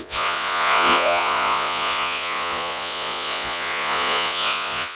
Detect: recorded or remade remade